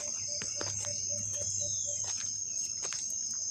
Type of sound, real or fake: real